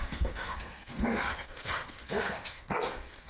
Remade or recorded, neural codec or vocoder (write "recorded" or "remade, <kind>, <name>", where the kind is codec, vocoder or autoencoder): remade, codec, SNAC